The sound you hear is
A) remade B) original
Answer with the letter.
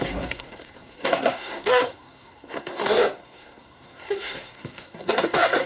A